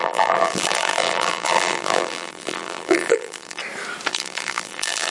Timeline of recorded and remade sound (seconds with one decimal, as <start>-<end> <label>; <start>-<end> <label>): 0.0-3.6 remade; 3.6-4.1 recorded; 4.1-5.1 remade